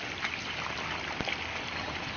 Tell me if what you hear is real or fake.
real